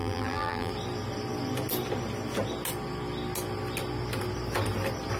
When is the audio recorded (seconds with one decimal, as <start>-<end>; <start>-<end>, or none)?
0.7-5.2